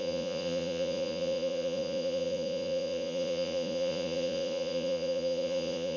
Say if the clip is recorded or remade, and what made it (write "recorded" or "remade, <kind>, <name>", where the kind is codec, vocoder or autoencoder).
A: remade, vocoder, Vocos